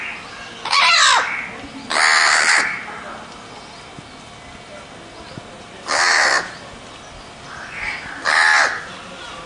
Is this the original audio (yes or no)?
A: yes